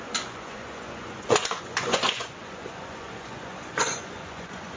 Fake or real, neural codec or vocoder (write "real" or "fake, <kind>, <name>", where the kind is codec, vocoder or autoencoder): fake, vocoder, Vocos